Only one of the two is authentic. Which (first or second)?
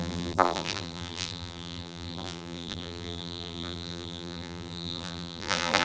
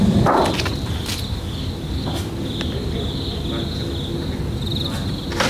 second